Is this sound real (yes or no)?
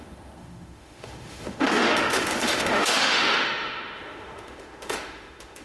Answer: no